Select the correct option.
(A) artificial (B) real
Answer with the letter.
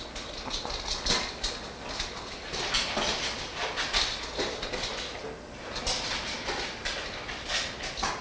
B